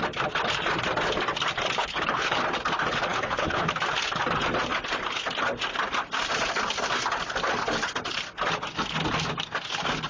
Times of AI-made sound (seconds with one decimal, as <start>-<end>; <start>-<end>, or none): 1.8-2.4; 3.1-3.7